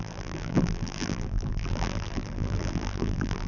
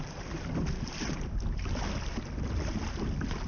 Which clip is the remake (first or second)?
first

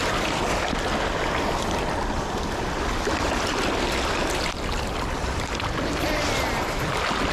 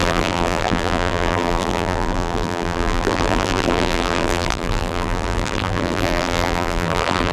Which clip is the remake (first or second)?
second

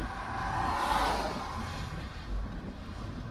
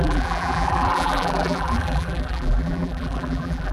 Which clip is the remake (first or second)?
second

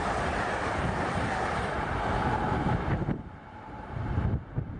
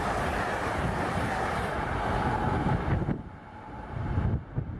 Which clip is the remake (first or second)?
first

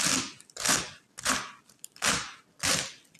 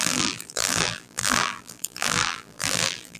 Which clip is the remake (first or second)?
second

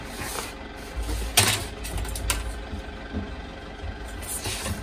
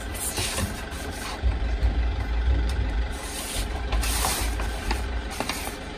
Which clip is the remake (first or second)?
second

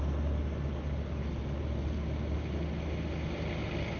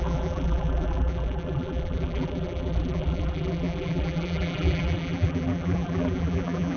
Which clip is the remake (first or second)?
second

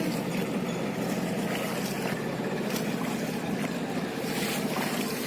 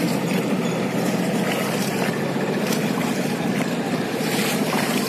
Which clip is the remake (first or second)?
second